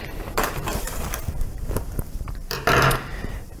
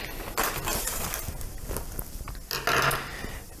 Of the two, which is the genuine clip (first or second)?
second